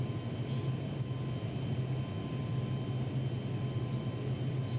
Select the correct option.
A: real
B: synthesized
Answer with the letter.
A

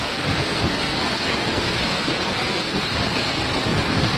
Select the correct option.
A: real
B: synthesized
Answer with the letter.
B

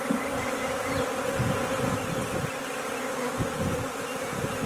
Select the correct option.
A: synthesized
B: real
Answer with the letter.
B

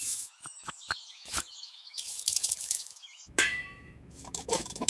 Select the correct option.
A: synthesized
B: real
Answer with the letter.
A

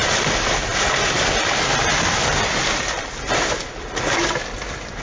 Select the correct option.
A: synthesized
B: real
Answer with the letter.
A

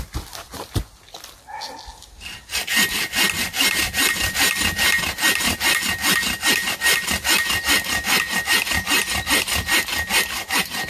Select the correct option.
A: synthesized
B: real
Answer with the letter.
B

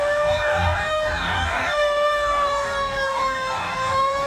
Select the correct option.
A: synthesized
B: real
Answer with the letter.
A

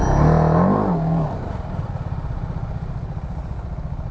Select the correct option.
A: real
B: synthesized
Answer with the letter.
A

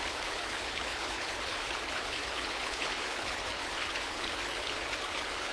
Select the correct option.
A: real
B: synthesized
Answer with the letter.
B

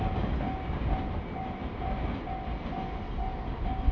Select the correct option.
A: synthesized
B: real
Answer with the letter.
B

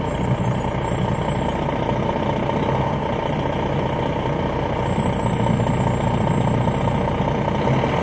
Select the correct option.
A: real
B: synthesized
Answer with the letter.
A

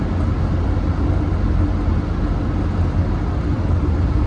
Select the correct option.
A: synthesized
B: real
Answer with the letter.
B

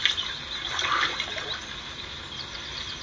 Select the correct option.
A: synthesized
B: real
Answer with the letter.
A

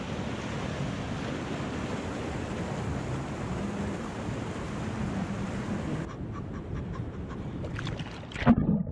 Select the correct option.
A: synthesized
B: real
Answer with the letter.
B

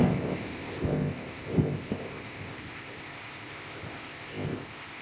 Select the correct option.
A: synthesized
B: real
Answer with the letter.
A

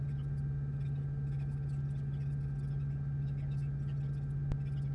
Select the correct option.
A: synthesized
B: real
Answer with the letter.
B